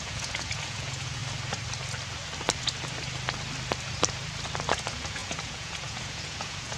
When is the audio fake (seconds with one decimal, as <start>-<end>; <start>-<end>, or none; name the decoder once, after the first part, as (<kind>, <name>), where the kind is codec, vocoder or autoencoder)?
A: 0.0-1.2 (vocoder, Vocos); 4.7-6.8